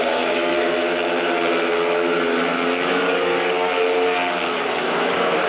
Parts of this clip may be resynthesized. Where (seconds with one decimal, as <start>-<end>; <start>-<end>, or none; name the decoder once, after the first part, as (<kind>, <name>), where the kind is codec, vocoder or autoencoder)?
0.0-0.5 (codec, DAC); 2.9-3.7; 4.8-5.5

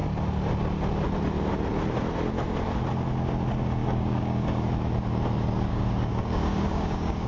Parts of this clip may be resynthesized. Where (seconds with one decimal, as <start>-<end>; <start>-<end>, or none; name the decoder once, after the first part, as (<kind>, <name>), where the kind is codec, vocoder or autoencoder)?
3.8-4.7 (codec, DAC); 5.7-7.3

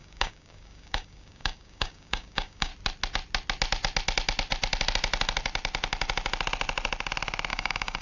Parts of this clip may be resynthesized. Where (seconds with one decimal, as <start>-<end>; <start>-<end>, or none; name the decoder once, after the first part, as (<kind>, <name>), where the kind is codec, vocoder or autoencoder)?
0.0-2.7 (codec, DAC); 7.5-8.0